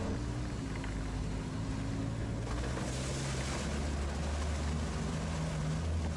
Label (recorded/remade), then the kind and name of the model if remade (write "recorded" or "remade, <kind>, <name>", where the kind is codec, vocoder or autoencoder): recorded